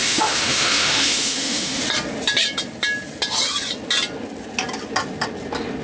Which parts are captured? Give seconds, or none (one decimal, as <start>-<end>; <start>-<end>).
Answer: 1.8-5.8